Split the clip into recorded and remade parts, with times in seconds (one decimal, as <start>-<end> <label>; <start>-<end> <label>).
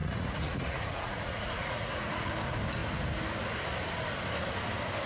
0.0-2.3 remade; 2.3-5.1 recorded